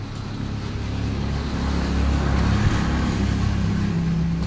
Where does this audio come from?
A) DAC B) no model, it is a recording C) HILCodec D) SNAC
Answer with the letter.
B